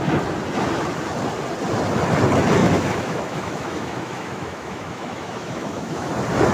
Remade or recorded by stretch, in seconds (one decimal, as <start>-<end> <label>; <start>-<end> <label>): 0.0-2.6 recorded; 2.6-6.1 remade; 6.1-6.5 recorded